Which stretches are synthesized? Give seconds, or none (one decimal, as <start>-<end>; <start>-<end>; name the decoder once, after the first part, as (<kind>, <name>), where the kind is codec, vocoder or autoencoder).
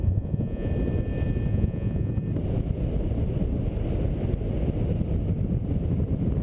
0.0-0.7 (vocoder, Vocos); 1.5-2.1